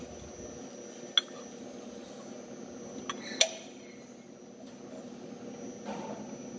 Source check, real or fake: real